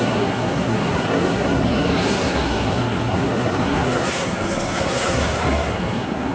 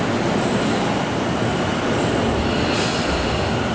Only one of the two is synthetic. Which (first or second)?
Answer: first